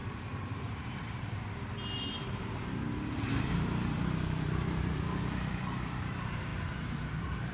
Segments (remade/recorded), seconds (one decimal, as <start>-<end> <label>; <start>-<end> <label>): 0.0-7.5 remade